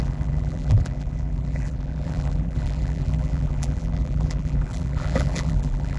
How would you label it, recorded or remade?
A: remade